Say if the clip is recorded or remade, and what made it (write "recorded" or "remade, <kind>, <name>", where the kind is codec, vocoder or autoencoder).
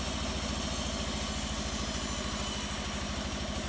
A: recorded